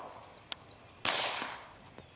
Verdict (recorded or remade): recorded